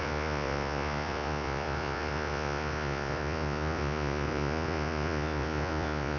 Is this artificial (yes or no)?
yes